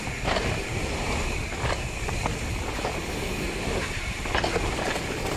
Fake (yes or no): no